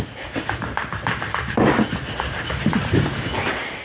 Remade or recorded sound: recorded